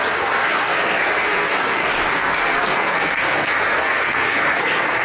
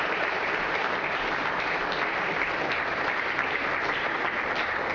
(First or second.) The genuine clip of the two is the second